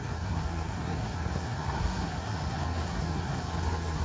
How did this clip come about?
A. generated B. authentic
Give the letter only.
A